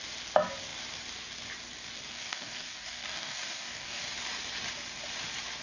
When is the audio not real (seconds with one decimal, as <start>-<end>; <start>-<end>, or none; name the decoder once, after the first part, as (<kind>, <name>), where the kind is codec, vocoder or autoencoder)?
2.1-4.0 (codec, DAC)